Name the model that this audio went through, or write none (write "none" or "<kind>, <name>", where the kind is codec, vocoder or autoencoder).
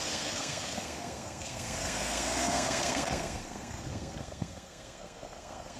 codec, SNAC